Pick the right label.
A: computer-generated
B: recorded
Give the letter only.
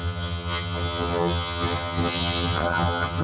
A